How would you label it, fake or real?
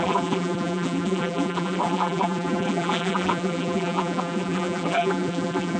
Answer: fake